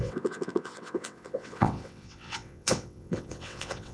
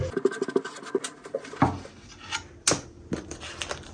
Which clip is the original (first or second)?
second